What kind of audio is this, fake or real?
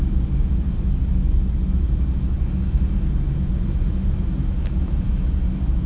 real